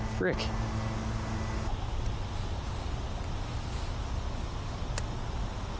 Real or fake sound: real